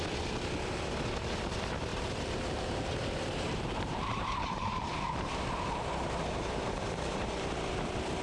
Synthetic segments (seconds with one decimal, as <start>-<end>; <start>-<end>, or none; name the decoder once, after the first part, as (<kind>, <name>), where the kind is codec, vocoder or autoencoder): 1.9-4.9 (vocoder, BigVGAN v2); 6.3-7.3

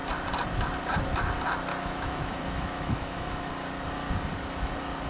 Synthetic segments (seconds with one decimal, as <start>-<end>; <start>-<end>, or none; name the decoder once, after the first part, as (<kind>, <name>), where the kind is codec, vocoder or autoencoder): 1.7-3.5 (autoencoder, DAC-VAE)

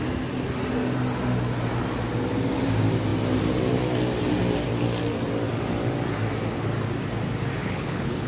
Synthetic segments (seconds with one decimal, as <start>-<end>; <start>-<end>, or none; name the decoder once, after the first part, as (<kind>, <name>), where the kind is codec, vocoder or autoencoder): 7.6-8.3 (codec, HILCodec)

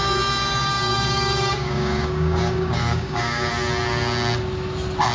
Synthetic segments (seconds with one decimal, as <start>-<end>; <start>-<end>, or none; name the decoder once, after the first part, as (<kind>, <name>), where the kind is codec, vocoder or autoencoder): 0.7-3.5 (codec, DAC)